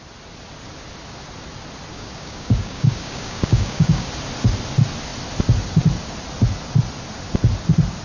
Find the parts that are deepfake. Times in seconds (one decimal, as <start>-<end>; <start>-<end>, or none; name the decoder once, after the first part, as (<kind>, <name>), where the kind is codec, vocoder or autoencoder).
1.9-4.1 (codec, DAC)